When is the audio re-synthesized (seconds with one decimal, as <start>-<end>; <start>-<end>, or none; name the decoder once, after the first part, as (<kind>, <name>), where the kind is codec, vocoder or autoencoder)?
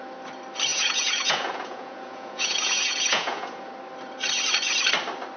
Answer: 0.7-3.7 (vocoder, Vocos)